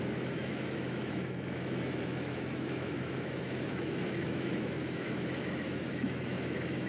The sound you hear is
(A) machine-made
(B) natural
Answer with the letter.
A